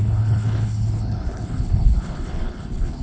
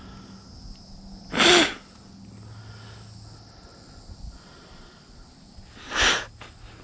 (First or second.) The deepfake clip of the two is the first